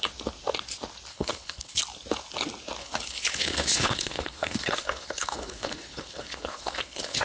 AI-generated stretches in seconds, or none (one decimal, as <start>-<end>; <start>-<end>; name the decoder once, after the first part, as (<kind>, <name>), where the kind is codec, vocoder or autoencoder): 1.1-1.8 (codec, HILCodec); 2.8-7.2